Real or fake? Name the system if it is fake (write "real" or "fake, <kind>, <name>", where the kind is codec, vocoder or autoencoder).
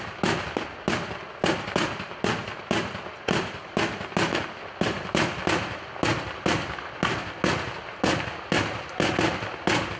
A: real